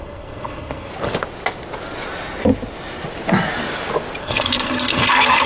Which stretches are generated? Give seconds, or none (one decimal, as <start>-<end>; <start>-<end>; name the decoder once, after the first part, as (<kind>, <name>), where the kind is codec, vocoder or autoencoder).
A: 0.0-0.9 (codec, SNAC); 4.2-5.5

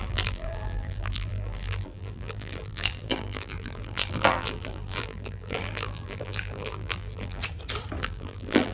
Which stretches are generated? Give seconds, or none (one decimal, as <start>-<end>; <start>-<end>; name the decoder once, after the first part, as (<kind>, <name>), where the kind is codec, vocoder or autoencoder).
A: 0.0-7.4 (vocoder, BigVGAN v2); 8.0-8.7

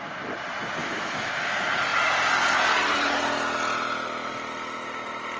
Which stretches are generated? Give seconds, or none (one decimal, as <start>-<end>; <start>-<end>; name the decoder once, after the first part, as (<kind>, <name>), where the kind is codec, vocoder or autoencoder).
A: 0.8-1.3 (autoencoder, DAC-VAE)

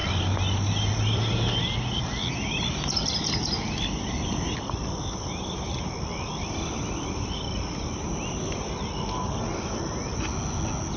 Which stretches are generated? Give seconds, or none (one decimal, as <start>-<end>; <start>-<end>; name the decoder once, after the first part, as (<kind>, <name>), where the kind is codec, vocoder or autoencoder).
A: none

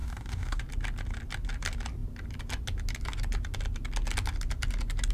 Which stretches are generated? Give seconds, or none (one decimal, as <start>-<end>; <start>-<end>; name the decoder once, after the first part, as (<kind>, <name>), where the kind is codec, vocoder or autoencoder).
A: 0.0-0.6 (codec, DAC)

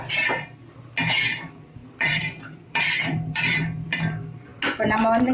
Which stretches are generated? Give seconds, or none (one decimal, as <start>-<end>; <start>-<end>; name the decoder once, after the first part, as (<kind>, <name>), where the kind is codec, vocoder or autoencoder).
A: 1.8-4.0 (vocoder, BigVGAN v2)